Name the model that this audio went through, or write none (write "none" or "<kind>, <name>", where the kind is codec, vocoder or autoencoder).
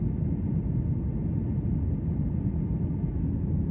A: none